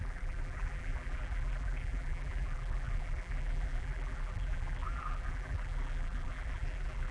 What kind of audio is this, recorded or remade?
remade